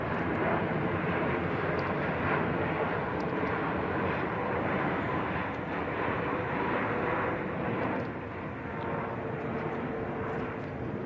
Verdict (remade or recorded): remade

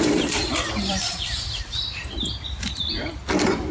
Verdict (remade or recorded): remade